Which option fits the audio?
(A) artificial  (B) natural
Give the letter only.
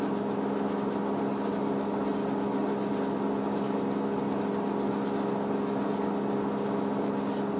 B